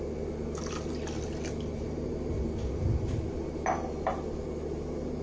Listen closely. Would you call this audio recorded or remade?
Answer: recorded